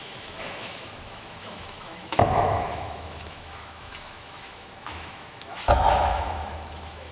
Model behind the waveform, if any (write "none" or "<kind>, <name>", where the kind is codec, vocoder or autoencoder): autoencoder, DAC-VAE